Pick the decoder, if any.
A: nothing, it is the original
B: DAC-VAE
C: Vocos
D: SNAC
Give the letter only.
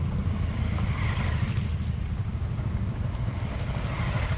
A